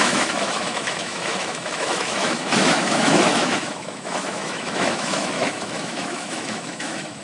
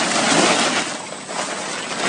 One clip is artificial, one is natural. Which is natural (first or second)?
second